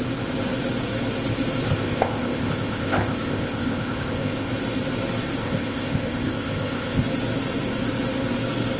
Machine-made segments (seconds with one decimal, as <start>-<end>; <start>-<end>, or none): 1.7-4.5; 5.4-7.0